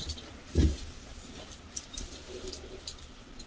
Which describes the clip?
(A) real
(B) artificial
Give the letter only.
A